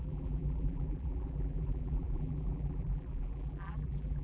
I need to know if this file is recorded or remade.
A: remade